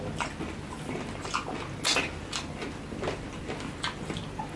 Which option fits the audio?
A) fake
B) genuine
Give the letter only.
B